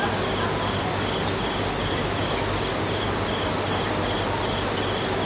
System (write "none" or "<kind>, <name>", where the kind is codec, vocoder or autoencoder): none